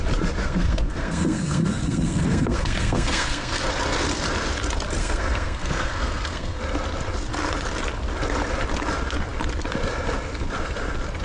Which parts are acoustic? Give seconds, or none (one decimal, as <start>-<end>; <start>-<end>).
0.0-0.4; 3.7-5.0; 6.6-11.2